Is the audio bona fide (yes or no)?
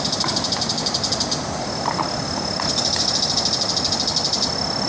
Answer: yes